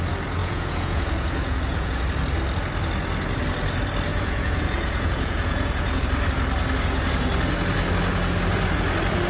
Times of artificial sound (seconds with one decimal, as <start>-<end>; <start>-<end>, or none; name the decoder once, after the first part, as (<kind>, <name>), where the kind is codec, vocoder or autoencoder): 0.4-2.0 (vocoder, Vocos); 4.1-6.0